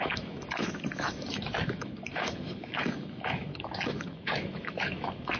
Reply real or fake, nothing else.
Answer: fake